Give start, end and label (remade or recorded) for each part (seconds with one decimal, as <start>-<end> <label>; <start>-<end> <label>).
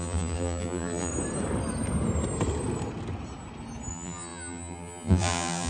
0.0-1.1 remade; 1.1-3.9 recorded; 3.9-5.7 remade